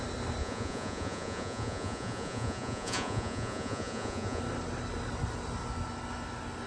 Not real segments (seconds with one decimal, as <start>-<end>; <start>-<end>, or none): 0.4-4.4